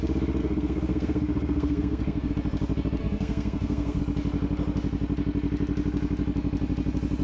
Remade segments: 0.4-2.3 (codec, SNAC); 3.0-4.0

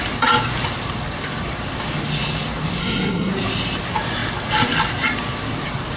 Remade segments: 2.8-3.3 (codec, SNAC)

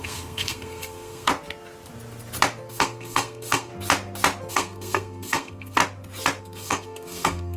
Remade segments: 0.0-1.3 (codec, SNAC); 2.7-3.7; 4.5-5.8; 6.4-7.6

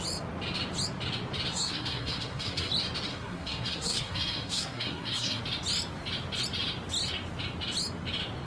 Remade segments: 1.5-2.7 (codec, SNAC); 3.1-5.4

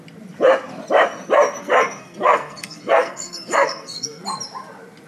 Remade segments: 1.6-4.2 (codec, SNAC)

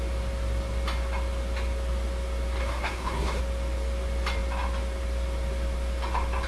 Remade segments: 2.6-3.4 (codec, SNAC)